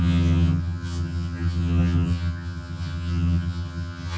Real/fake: fake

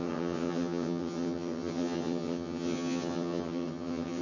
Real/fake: fake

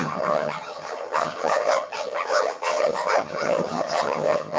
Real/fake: fake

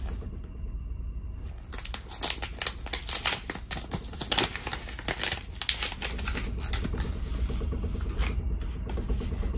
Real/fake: real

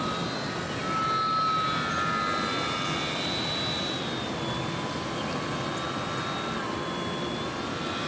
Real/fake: real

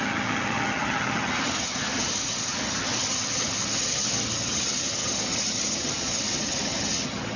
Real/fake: fake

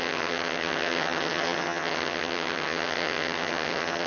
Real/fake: fake